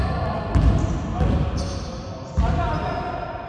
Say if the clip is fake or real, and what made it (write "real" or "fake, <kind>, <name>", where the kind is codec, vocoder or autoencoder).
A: real